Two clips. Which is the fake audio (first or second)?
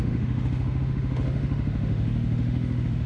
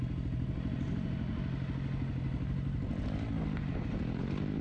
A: first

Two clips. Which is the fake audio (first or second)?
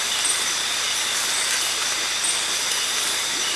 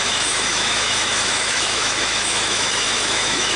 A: second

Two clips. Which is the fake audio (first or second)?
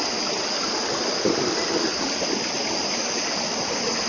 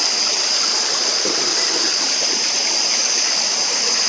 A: second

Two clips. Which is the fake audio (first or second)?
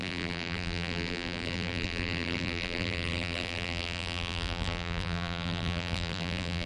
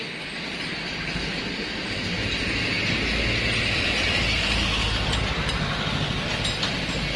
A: first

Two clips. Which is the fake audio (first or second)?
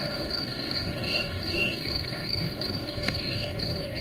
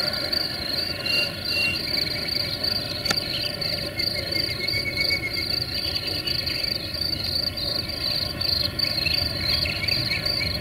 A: first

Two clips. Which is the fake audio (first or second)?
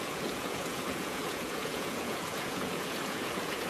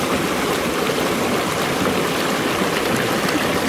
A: first